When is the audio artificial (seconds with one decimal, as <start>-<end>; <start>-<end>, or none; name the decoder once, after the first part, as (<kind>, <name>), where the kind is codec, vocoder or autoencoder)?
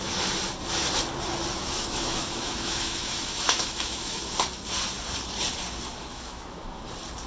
1.6-4.3 (autoencoder, DAC-VAE); 6.1-6.8